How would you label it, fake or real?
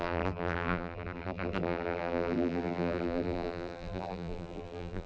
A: fake